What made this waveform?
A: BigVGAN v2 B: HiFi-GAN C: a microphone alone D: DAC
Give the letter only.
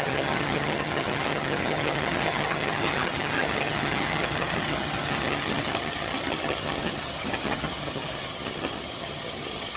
B